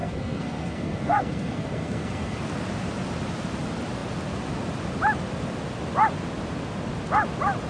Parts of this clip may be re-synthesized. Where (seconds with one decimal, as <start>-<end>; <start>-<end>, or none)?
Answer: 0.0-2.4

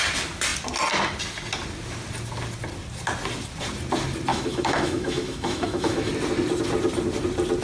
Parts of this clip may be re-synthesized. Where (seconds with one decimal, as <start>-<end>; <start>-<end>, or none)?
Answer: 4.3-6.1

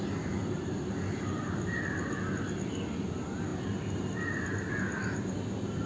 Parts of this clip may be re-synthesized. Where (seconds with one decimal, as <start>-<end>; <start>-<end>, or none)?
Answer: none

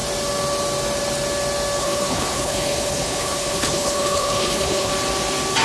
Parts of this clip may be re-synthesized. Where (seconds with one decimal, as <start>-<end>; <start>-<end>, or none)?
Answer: 1.8-4.9

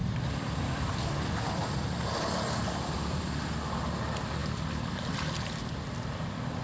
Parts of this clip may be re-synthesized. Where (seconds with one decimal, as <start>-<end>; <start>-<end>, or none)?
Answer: none